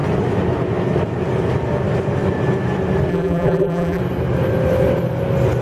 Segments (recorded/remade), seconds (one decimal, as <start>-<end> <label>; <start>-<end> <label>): 0.0-3.1 recorded; 3.1-4.0 remade; 4.0-5.6 recorded